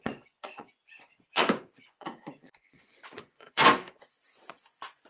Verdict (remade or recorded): remade